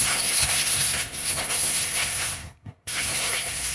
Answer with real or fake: fake